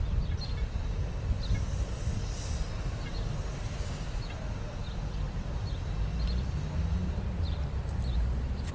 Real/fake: real